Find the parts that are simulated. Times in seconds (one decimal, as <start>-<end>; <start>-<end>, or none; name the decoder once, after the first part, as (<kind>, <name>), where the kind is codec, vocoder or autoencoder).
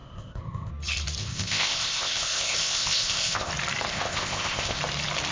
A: 0.0-0.7 (codec, ZipCodec); 1.2-3.5; 3.9-4.8